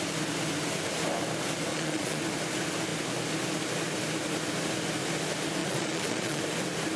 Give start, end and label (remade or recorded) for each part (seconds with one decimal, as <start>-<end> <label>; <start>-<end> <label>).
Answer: 0.0-1.7 recorded; 1.7-2.2 remade; 2.2-5.6 recorded; 5.6-6.4 remade; 6.4-7.0 recorded